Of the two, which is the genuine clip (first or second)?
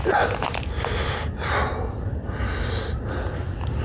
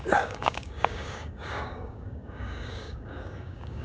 first